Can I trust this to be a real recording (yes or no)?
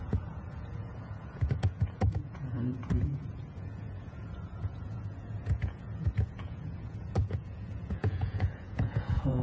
no